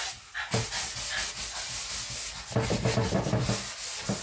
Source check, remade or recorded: recorded